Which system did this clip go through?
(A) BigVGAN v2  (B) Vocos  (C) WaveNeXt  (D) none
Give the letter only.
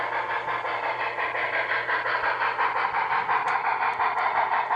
D